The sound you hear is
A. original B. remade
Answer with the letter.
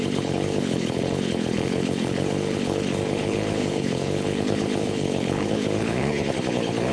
B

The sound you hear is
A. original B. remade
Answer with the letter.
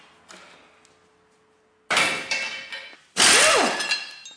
A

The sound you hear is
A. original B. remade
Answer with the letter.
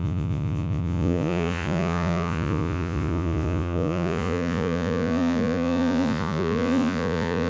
B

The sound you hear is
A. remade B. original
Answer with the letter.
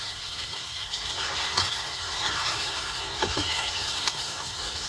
A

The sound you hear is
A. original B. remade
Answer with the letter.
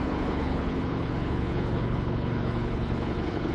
B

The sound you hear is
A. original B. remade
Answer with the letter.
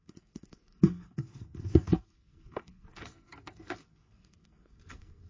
B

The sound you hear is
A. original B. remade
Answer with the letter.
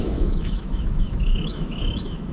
B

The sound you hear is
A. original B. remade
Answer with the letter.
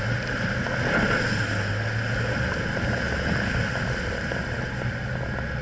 A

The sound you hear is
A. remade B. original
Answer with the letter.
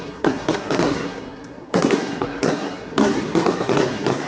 A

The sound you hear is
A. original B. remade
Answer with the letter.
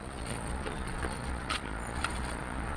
B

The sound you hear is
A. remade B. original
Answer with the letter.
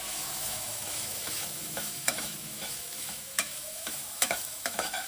A